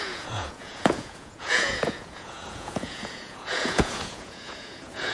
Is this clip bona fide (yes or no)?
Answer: no